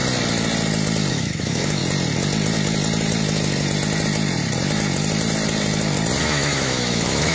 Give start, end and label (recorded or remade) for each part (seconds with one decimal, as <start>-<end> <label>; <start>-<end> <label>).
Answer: 0.0-1.1 recorded; 1.1-1.8 remade; 1.8-6.2 recorded; 6.2-7.3 remade